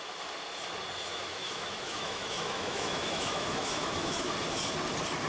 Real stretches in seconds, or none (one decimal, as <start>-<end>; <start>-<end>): 0.0-1.1; 4.3-5.3